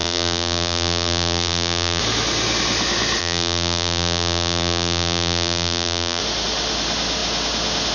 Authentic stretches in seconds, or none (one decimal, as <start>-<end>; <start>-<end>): 2.0-3.2; 6.2-7.9